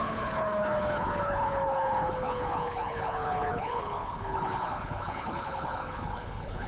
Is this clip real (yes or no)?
no